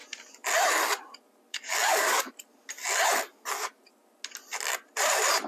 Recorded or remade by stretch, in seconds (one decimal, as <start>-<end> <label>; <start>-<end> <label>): 0.0-1.5 recorded; 1.5-2.3 remade; 2.3-5.5 recorded